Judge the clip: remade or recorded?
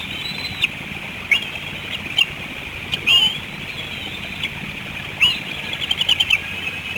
recorded